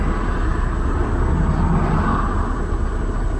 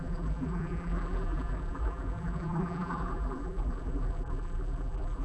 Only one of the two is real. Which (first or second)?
first